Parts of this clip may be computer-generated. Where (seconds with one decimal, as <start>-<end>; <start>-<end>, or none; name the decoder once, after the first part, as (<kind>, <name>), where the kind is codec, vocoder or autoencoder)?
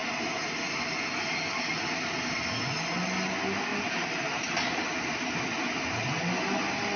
none